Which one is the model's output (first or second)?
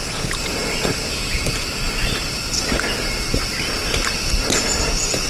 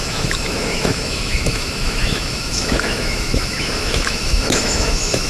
second